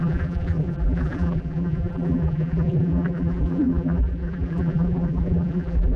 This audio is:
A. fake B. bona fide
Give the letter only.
A